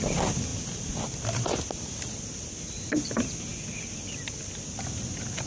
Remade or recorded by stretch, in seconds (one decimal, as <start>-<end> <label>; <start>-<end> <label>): 0.0-5.5 recorded